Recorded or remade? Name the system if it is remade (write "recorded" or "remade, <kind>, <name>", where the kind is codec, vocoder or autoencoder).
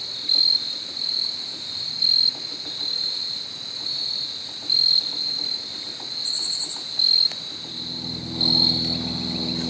recorded